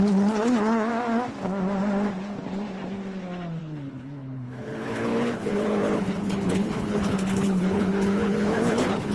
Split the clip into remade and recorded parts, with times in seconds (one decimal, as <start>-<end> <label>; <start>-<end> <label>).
0.0-0.9 remade; 0.9-3.6 recorded; 3.6-9.1 remade